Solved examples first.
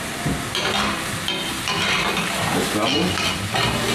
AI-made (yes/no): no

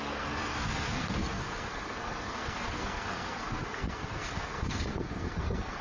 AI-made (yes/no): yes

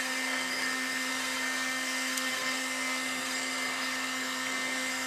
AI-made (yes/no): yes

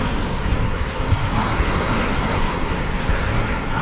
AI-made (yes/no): yes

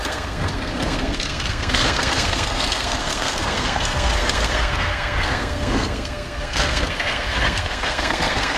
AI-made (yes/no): yes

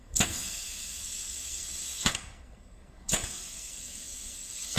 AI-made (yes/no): yes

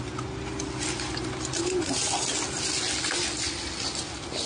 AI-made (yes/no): no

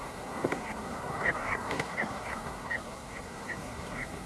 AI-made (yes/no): yes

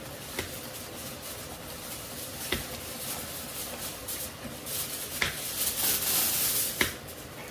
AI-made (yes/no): no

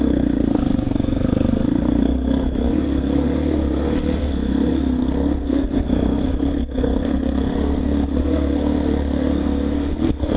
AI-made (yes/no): yes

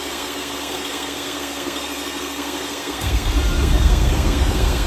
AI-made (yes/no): yes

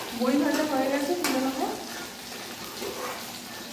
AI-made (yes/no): no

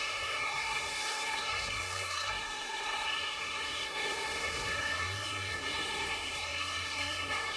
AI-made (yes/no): yes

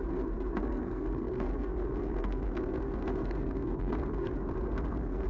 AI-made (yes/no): yes